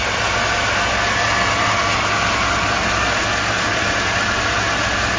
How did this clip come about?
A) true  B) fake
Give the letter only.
A